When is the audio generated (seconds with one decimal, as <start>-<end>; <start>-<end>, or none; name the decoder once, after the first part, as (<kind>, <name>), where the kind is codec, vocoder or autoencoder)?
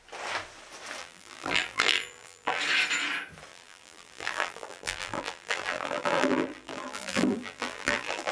1.0-2.6 (vocoder, BigVGAN v2); 3.5-8.3